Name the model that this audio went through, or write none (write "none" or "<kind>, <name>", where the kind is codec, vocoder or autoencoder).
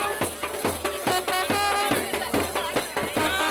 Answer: none